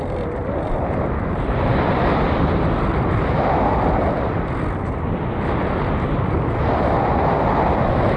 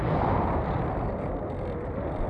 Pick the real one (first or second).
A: second